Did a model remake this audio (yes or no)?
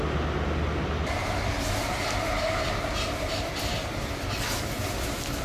no